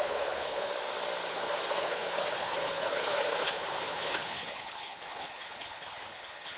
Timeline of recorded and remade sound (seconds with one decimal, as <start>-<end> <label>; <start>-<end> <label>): 0.0-0.7 remade; 0.7-1.3 recorded; 1.3-6.6 remade